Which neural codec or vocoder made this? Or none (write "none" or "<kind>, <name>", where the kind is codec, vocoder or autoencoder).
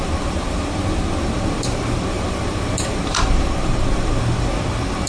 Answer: vocoder, BigVGAN v2